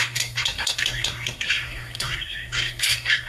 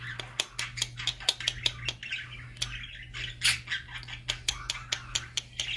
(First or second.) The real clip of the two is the second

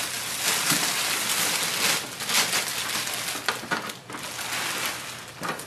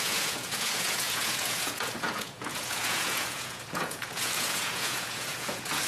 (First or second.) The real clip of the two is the first